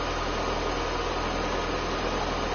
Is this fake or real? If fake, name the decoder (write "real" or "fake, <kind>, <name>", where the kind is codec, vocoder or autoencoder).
real